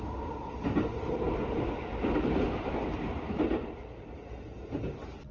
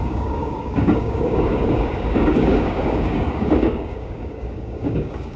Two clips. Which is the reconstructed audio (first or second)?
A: second